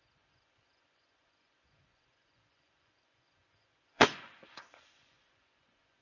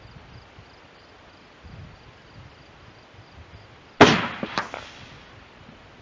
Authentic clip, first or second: second